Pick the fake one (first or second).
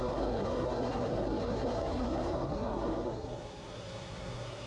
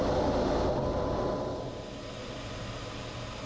first